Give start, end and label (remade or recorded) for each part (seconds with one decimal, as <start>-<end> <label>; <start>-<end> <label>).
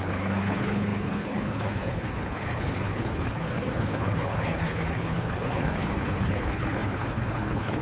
0.0-7.8 remade